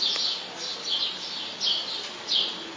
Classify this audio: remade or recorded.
recorded